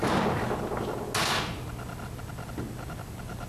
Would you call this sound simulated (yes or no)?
no